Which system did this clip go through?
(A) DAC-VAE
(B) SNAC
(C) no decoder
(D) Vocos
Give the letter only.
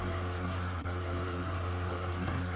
B